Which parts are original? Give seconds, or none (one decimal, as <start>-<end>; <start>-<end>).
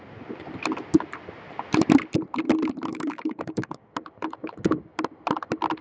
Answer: 0.0-2.9; 3.9-5.8